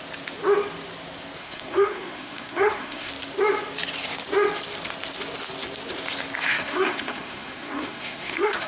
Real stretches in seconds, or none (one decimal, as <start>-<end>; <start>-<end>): 0.0-1.4; 3.1-6.5